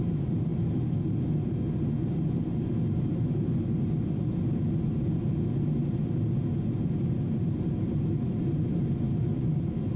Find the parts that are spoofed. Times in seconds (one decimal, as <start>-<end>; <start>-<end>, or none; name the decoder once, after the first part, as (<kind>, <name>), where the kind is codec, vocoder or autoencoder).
none